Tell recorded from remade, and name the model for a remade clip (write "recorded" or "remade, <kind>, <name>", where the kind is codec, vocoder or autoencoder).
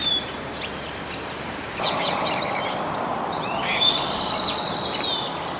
remade, vocoder, BigVGAN v2